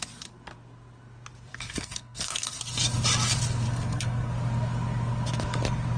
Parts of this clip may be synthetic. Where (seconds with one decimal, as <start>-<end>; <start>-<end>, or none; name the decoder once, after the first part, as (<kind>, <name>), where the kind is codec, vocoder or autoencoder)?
1.5-2.6 (codec, SNAC); 3.7-4.3